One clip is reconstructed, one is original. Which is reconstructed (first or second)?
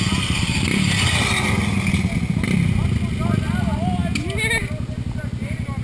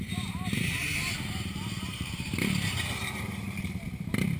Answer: second